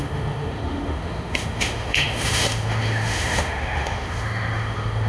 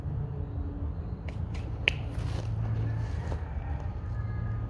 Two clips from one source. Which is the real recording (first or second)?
second